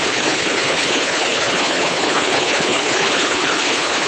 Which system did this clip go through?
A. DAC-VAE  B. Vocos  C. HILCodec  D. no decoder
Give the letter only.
C